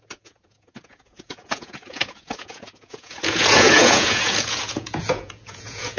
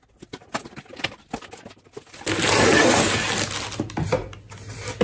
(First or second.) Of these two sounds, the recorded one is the second